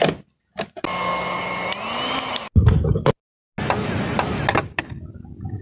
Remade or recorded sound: recorded